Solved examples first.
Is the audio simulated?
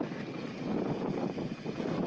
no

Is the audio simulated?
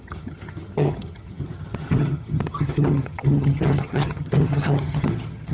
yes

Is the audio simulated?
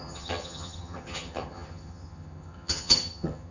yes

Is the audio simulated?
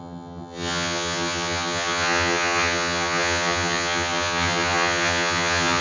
yes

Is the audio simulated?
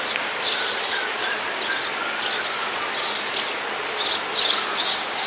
no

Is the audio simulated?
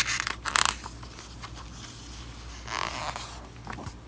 no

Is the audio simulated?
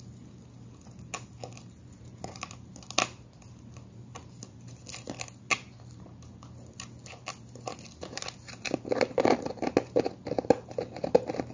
no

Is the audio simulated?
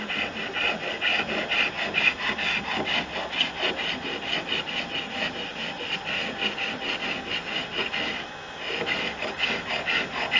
no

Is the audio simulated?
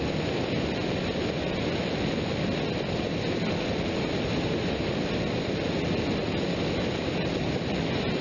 no